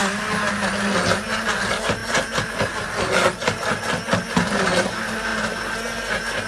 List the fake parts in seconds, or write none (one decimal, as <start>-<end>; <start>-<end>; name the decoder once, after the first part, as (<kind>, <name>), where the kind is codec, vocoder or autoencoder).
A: none